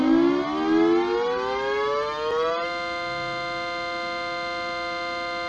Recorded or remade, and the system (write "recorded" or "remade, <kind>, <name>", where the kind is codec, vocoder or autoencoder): recorded